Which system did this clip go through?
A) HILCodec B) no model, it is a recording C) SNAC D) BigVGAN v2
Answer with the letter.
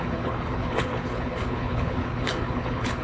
A